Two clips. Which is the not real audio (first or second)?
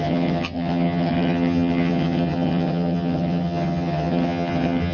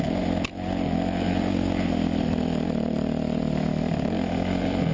first